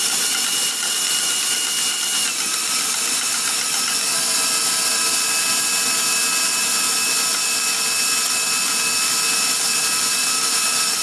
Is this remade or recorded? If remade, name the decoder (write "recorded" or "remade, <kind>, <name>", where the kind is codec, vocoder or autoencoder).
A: recorded